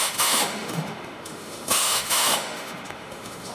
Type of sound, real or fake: fake